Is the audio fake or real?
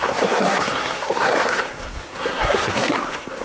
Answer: fake